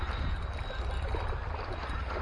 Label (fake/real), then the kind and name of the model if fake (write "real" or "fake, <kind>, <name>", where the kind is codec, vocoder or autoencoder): real